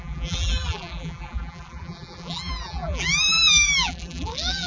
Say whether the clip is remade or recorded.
remade